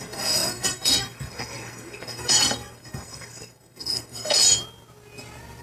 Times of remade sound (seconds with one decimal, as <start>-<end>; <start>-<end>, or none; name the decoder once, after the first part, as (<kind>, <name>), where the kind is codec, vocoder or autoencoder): 0.0-4.4 (codec, SNAC)